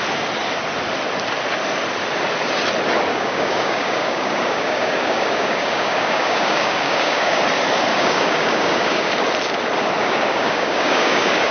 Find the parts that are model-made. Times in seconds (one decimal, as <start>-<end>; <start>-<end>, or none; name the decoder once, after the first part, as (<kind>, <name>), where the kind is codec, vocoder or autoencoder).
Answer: 3.1-7.4 (codec, DAC); 7.9-9.1; 10.0-11.5